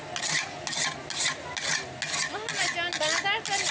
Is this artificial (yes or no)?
no